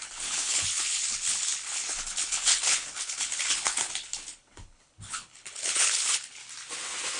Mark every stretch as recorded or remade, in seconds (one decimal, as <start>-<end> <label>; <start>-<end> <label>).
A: 0.0-6.4 remade; 6.4-7.2 recorded